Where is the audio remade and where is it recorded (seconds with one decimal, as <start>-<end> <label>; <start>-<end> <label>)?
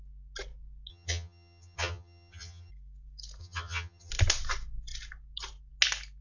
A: 0.0-0.9 recorded; 0.9-2.7 remade; 2.7-3.4 recorded; 3.4-4.1 remade; 4.1-6.2 recorded